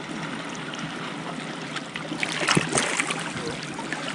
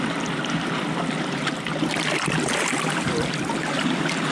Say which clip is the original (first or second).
first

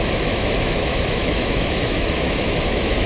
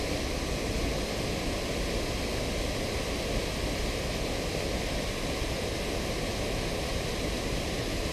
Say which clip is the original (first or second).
second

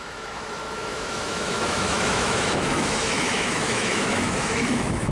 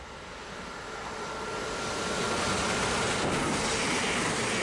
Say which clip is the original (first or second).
second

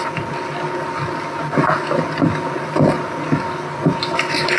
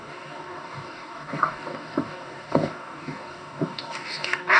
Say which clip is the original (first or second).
first